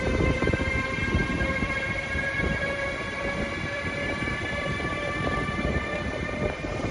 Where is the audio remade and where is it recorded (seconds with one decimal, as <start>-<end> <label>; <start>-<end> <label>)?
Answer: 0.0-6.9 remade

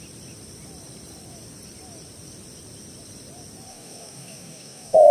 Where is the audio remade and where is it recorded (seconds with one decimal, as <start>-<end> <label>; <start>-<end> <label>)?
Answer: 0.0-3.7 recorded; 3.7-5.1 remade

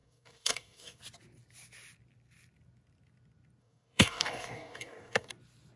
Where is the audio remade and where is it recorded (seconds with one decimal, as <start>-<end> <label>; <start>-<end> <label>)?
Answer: 0.0-1.0 remade; 1.0-3.6 recorded; 3.6-5.3 remade; 5.3-5.8 recorded

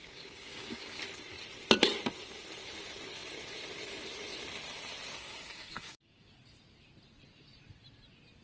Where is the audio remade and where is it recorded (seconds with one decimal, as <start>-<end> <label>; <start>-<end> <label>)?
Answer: 0.0-1.0 remade; 1.0-5.2 recorded; 5.2-6.3 remade; 6.3-8.4 recorded